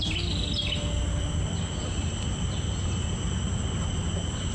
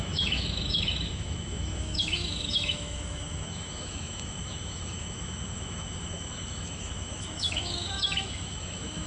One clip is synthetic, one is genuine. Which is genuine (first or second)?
first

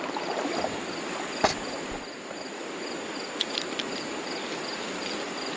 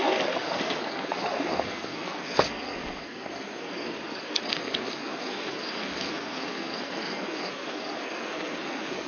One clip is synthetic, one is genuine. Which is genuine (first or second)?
first